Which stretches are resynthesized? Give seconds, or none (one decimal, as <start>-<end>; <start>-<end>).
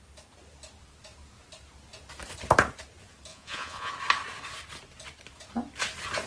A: 3.3-3.9